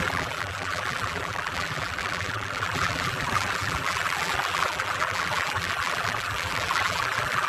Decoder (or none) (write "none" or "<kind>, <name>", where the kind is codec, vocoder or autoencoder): vocoder, BigVGAN v2